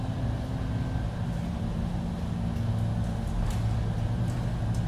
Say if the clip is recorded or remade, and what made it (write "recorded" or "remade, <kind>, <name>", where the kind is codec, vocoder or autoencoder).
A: recorded